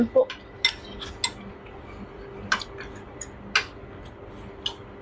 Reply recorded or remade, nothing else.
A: recorded